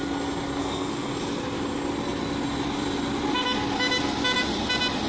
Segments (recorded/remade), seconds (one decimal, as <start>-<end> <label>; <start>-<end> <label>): 0.0-0.6 recorded; 0.6-1.1 remade; 1.1-5.1 recorded